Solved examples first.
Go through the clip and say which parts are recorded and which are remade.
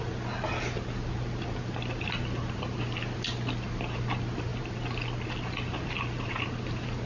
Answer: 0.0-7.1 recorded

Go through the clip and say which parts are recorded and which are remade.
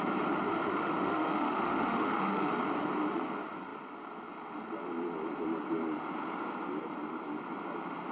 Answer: 0.0-0.5 recorded; 0.5-2.5 remade; 2.5-8.1 recorded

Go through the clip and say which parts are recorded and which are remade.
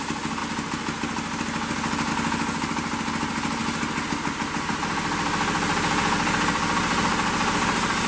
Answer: 0.0-8.1 recorded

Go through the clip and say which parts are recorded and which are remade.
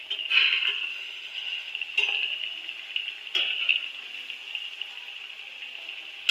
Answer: 0.0-0.9 recorded; 0.9-1.7 remade; 1.7-6.3 recorded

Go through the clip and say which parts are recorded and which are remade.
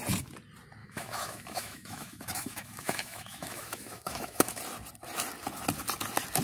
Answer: 0.0-0.8 recorded; 0.8-4.6 remade; 4.6-6.4 recorded